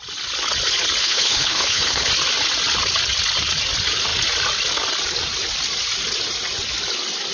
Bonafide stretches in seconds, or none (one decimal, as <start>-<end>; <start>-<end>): 0.0-1.0; 2.1-7.3